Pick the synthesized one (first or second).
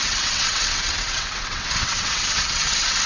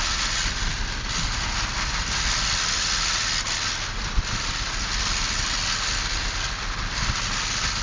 first